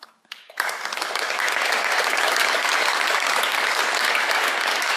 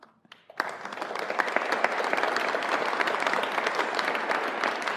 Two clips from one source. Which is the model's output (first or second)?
first